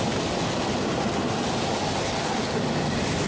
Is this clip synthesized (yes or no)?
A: no